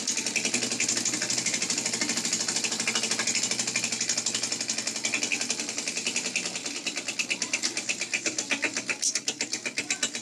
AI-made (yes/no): no